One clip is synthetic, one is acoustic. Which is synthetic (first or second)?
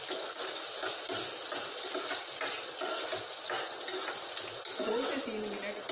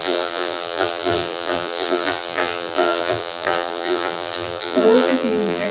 second